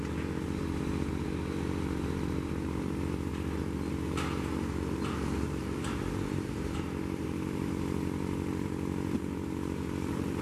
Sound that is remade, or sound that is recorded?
remade